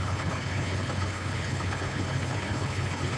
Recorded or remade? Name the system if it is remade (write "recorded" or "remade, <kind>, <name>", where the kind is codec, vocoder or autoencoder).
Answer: remade, codec, HILCodec